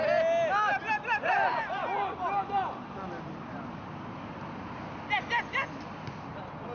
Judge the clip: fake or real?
real